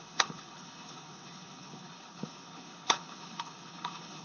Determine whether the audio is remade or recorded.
remade